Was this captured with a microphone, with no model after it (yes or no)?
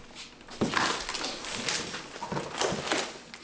yes